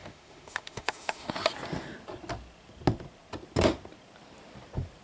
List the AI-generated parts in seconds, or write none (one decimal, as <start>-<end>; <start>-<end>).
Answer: 0.0-1.3

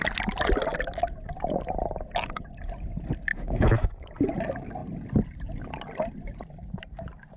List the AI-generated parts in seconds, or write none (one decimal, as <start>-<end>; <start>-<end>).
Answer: 3.3-4.1

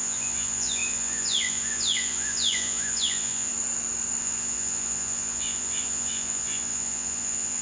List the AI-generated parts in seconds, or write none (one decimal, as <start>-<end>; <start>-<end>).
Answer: 0.0-3.5; 4.2-7.6